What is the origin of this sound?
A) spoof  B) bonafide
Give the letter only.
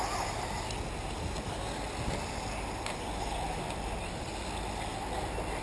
B